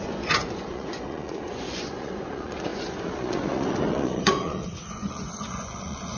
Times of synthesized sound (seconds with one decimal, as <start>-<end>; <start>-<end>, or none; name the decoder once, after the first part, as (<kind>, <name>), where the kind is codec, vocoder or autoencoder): 0.0-6.2 (vocoder, Vocos)

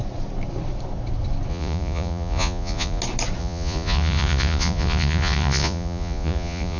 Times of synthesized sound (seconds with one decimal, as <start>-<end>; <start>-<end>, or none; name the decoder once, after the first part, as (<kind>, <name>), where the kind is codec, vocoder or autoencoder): 1.5-3.0 (vocoder, Vocos); 3.4-6.8